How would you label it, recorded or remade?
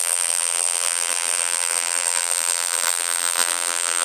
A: remade